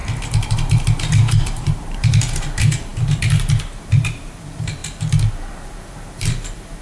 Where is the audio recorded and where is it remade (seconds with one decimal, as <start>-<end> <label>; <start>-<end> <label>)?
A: 0.0-0.5 recorded; 0.5-4.8 remade; 4.8-5.5 recorded; 5.5-6.8 remade